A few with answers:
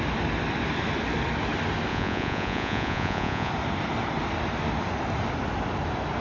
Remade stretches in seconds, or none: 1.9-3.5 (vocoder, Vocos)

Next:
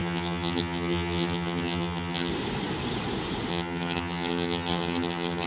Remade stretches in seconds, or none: 0.0-2.3 (vocoder, HiFi-GAN); 3.5-5.5

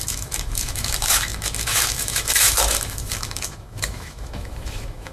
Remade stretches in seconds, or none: 0.0-5.1 (autoencoder, DAC-VAE)